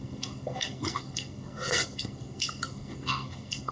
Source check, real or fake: fake